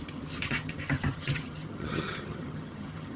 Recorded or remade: remade